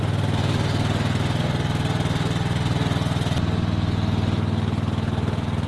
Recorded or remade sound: recorded